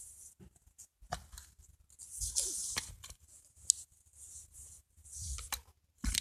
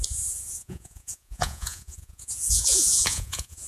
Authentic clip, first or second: first